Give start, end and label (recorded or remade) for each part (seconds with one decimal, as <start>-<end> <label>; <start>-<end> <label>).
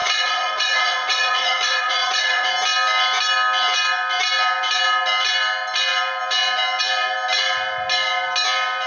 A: 0.0-2.5 remade; 2.5-8.9 recorded